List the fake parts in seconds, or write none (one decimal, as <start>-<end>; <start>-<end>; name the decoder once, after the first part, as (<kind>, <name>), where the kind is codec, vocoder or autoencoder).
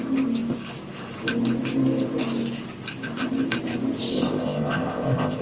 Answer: 4.1-5.4 (codec, ZipCodec)